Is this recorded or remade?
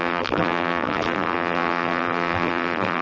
remade